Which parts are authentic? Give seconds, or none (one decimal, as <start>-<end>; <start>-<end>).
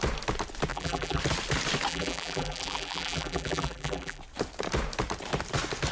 0.0-0.7; 1.2-1.9; 4.2-5.9